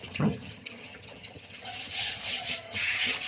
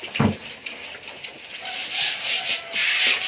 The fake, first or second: first